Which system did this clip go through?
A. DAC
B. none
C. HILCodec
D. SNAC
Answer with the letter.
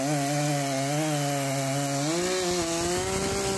B